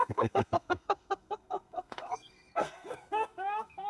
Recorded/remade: remade